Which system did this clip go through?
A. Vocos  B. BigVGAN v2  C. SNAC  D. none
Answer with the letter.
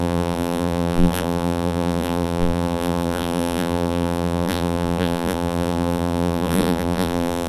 B